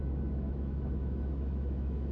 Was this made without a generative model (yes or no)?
no